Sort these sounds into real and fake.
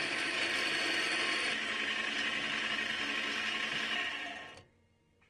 real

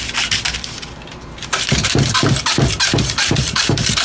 real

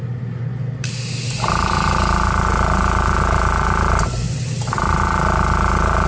real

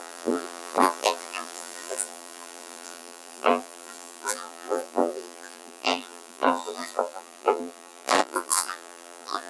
fake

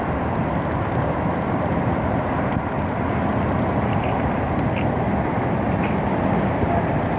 fake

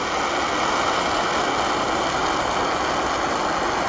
real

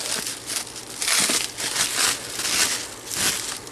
real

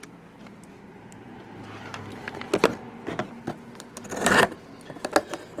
real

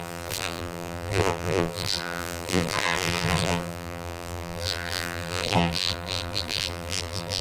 fake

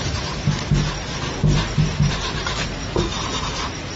fake